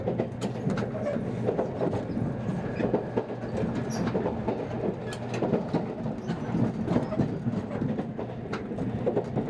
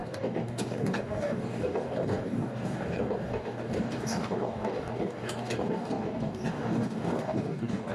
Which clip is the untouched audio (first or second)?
first